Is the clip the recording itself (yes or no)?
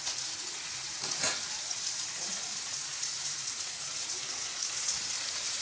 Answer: no